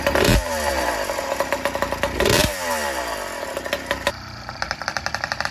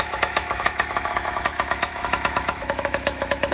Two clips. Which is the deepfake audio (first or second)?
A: second